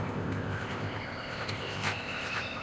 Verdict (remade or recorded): remade